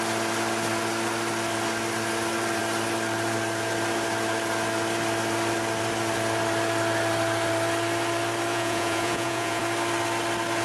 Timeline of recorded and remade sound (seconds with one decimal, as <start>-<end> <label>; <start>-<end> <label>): 0.0-8.5 recorded; 8.5-9.6 remade; 9.6-10.6 recorded

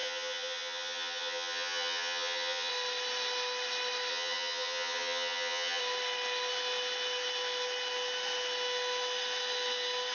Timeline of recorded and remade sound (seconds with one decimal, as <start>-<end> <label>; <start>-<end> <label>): 0.0-2.7 remade; 2.7-4.1 recorded; 4.1-5.8 remade; 5.8-10.1 recorded

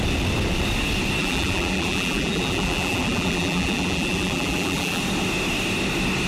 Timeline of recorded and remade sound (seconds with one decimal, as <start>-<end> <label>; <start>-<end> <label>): 0.0-1.2 recorded; 1.2-5.0 remade; 5.0-6.3 recorded

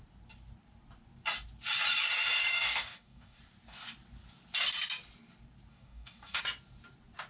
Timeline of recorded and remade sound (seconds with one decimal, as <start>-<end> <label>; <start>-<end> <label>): 0.0-2.5 recorded; 2.5-3.4 remade; 3.4-5.7 recorded; 5.7-6.4 remade; 6.4-7.3 recorded

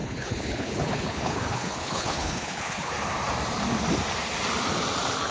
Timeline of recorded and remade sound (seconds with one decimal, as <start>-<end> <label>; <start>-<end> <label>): 0.0-2.9 remade; 2.9-5.3 recorded